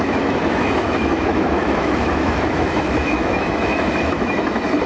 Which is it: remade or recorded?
remade